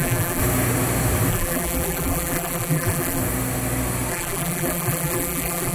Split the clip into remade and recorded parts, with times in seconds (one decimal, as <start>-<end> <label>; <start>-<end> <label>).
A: 0.0-0.4 remade; 0.4-1.3 recorded; 1.3-3.2 remade; 3.2-4.1 recorded; 4.1-5.7 remade

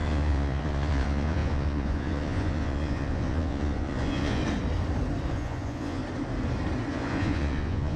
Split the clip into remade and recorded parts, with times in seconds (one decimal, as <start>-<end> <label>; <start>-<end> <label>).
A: 0.0-4.4 remade; 4.4-5.3 recorded; 5.3-6.0 remade; 6.0-6.9 recorded; 6.9-8.0 remade

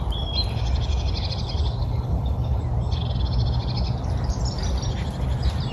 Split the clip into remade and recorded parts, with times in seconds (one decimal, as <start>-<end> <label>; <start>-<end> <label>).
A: 0.0-1.8 recorded; 1.8-2.6 remade; 2.6-5.7 recorded